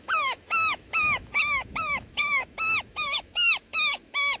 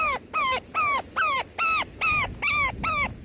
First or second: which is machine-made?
first